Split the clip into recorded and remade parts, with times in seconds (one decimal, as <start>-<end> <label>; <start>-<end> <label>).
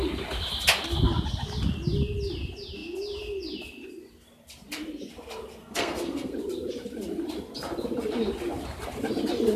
0.0-5.5 recorded; 5.5-6.3 remade; 6.3-9.6 recorded